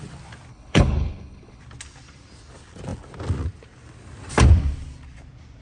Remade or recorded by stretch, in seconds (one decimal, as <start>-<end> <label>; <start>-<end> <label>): 0.0-0.5 recorded; 0.5-1.6 remade; 1.6-5.6 recorded

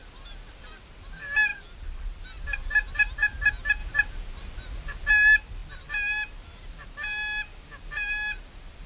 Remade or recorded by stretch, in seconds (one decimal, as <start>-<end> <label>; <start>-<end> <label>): 0.0-8.9 recorded

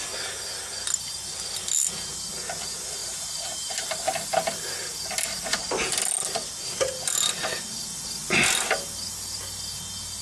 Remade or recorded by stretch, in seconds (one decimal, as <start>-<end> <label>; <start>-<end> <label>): 0.0-3.0 recorded; 3.0-5.4 remade; 5.4-10.2 recorded

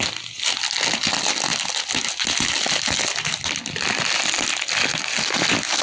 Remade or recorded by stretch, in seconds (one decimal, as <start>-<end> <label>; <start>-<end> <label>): 0.0-5.8 recorded

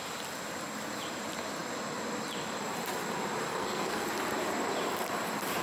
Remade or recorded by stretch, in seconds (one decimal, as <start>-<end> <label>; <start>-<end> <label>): 0.0-3.5 recorded; 3.5-4.1 remade; 4.1-5.6 recorded

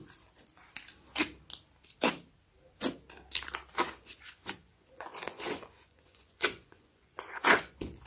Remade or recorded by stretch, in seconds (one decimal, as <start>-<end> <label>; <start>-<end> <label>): 0.0-3.9 recorded; 3.9-8.1 remade

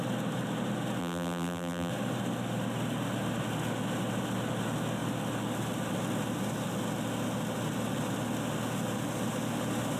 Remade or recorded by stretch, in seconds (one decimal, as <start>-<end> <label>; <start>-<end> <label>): 0.0-1.0 recorded; 1.0-1.9 remade; 1.9-10.0 recorded

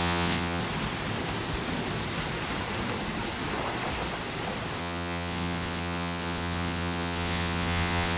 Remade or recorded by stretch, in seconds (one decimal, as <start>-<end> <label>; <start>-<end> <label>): 0.0-0.6 remade; 0.6-4.8 recorded; 4.8-8.2 remade